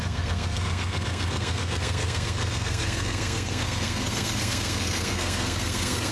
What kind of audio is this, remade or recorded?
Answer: remade